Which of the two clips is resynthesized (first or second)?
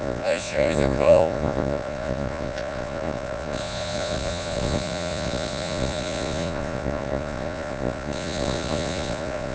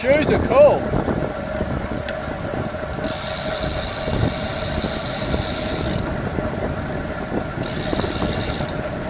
first